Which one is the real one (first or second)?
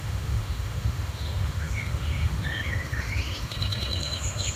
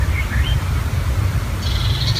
second